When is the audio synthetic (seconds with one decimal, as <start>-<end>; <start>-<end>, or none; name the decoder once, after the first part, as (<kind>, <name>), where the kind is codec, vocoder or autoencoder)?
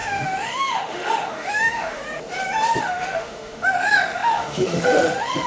0.0-2.0 (autoencoder, DAC-VAE); 2.8-5.5